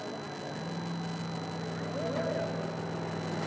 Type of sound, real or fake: real